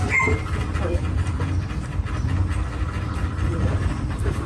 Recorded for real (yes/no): no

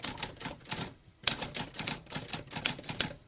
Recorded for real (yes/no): no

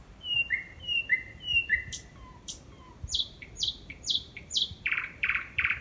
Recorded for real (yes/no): no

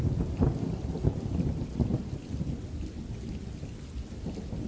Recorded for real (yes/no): yes